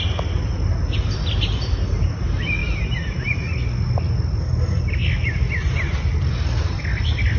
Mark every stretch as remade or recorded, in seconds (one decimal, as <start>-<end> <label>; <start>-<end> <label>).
0.0-7.4 recorded